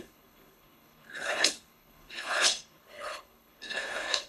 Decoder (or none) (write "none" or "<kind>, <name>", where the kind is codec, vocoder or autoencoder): codec, HILCodec